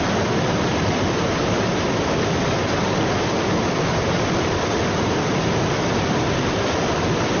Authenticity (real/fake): real